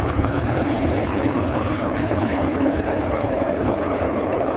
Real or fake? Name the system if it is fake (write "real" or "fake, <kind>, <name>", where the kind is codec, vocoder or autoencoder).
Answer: fake, codec, HILCodec